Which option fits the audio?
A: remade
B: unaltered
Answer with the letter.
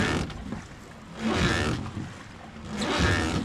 B